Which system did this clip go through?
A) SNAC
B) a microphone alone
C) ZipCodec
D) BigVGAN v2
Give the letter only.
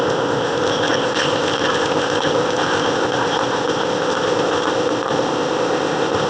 C